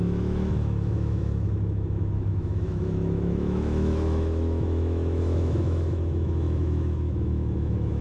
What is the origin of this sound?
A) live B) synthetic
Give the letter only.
B